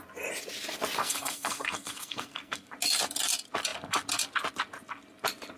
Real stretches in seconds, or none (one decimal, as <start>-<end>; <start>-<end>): 0.0-1.0; 2.7-5.6